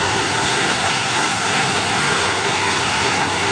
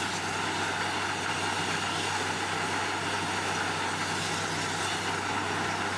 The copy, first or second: first